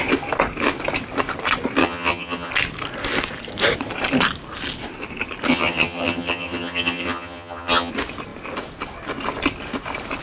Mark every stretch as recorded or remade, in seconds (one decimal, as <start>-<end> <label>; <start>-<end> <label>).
0.0-1.8 recorded; 1.8-2.5 remade; 2.5-5.5 recorded; 5.5-7.9 remade; 7.9-10.2 recorded